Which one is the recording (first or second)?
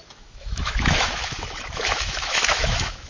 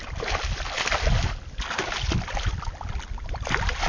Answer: second